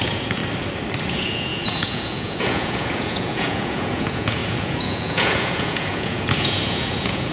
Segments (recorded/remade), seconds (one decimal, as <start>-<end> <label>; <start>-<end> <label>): 0.0-0.4 remade; 0.4-1.1 recorded; 1.1-7.3 remade